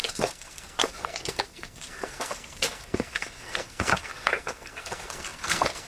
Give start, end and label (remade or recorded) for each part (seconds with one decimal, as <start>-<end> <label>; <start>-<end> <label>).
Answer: 0.0-5.9 remade